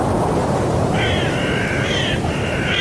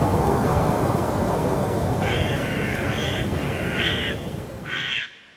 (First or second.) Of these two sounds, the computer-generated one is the second